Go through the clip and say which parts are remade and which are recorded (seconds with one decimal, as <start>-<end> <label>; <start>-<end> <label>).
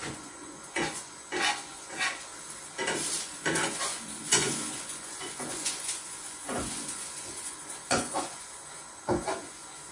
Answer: 0.0-2.3 remade; 2.3-3.2 recorded; 3.2-9.9 remade